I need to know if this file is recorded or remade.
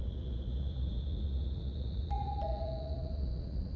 remade